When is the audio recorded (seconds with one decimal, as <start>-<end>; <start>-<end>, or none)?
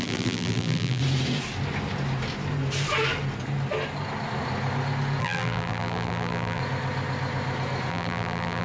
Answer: 1.0-5.2; 6.6-7.9